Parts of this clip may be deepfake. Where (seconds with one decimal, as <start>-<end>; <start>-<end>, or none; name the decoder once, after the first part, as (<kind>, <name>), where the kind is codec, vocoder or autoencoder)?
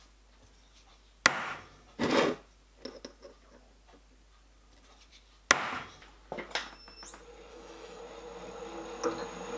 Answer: 7.5-8.0 (autoencoder, DAC-VAE)